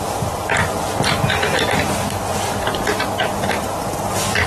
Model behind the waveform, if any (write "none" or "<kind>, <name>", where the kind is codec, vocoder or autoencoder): none